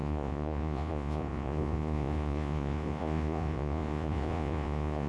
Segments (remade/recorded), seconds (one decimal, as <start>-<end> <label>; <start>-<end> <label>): 0.0-5.1 remade